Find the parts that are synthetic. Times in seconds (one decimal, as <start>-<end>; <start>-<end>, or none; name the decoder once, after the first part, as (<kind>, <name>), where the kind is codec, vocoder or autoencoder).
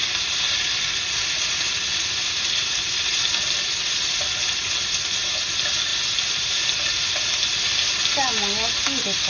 none